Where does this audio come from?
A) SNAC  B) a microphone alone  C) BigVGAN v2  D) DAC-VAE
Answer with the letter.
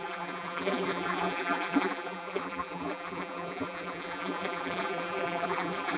C